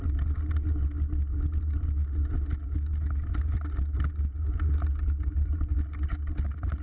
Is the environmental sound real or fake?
real